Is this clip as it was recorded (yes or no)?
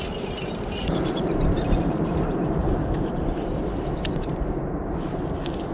no